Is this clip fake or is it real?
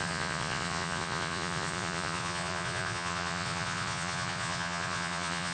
fake